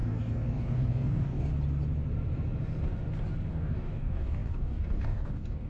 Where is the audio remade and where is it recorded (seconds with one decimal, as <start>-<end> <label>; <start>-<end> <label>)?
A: 0.0-1.5 remade; 1.5-3.5 recorded; 3.5-5.7 remade